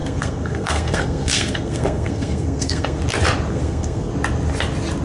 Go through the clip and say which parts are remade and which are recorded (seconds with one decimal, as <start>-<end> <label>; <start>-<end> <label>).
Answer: 0.0-3.0 remade; 3.0-3.5 recorded; 3.5-4.1 remade; 4.1-5.0 recorded